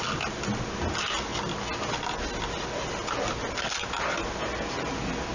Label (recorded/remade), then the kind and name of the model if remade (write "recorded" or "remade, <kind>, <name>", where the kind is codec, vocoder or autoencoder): recorded